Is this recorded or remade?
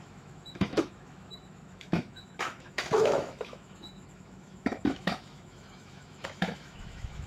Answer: remade